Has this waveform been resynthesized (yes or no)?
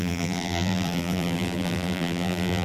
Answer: yes